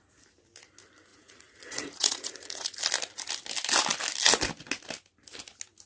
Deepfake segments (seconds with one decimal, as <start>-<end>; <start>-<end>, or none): 1.1-2.8